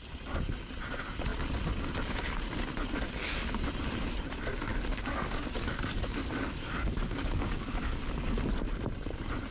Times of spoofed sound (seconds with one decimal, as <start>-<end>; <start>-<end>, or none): 4.7-8.5